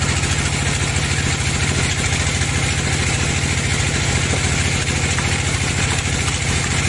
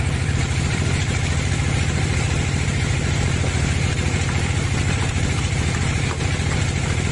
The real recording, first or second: first